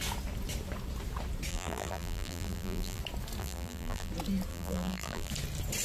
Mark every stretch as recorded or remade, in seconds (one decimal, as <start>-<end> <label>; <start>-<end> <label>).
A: 0.0-1.5 recorded; 1.5-3.0 remade; 3.0-3.4 recorded; 3.4-4.1 remade; 4.1-4.5 recorded; 4.5-5.3 remade; 5.3-5.8 recorded